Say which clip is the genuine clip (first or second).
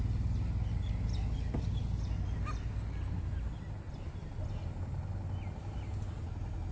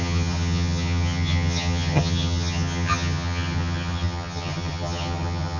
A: first